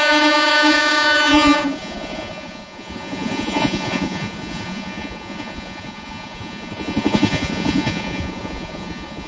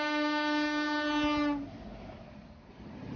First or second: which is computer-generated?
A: first